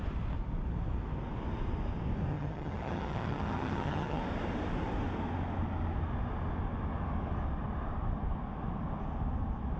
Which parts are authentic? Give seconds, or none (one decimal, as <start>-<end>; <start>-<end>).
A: 0.0-2.3; 4.2-9.8